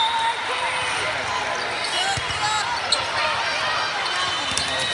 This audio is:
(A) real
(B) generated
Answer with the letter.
A